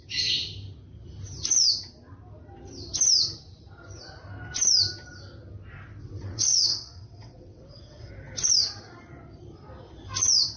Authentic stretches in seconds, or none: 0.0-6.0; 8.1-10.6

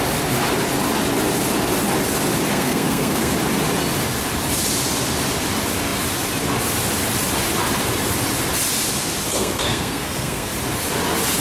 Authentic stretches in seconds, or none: 0.0-2.5; 3.3-9.3; 10.5-11.4

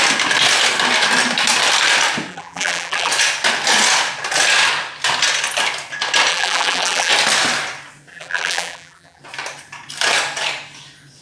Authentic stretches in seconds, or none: 0.0-2.3; 3.1-6.3; 7.1-8.1; 9.2-11.2